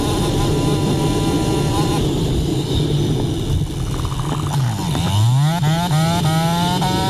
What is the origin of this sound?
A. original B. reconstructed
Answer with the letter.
A